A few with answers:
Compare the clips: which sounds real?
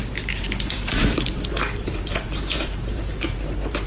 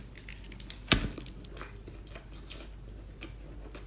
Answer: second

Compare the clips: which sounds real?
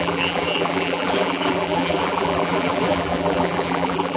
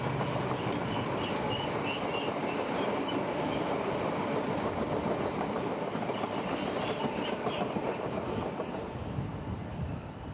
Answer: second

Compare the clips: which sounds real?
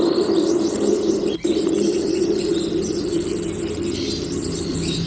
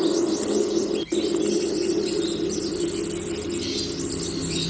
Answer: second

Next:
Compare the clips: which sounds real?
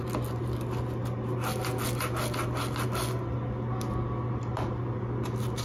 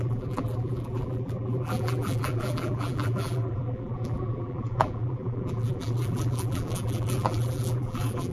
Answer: first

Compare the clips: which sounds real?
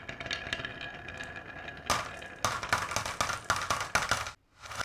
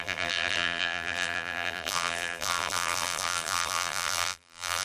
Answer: first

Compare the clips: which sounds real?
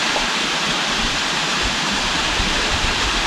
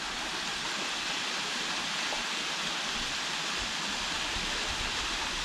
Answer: second